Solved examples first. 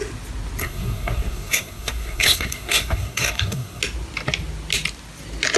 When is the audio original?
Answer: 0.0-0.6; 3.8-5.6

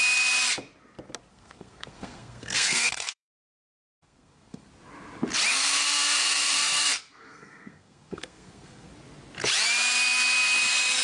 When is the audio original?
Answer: 0.0-1.3; 4.7-5.5; 8.9-11.0

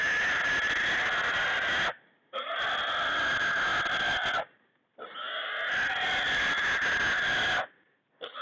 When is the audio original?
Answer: 0.0-8.4

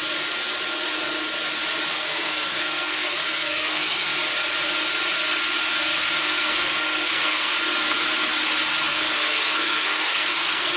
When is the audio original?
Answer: 0.0-1.9; 4.1-6.2; 7.5-8.9

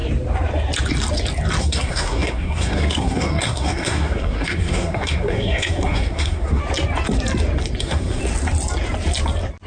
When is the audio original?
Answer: 0.0-1.6; 6.6-7.8; 8.2-9.7

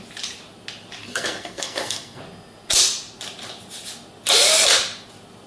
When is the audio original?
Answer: 0.0-1.0; 2.2-5.5